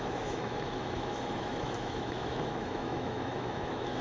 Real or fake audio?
fake